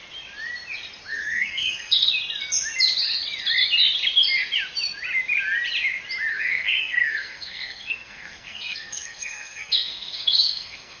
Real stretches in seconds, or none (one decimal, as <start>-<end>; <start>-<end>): 0.0-1.1; 2.1-6.3